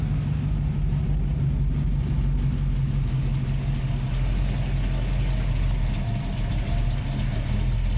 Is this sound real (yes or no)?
yes